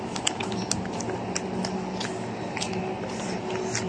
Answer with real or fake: real